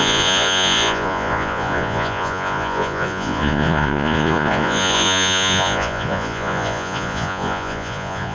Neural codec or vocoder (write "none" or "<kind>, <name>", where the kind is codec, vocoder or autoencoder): vocoder, Vocos